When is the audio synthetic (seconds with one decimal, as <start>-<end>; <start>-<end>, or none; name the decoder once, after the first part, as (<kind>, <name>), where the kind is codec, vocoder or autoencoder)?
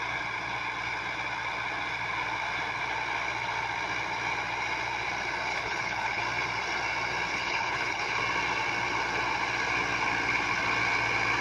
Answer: 5.5-6.2 (codec, HILCodec); 7.3-8.2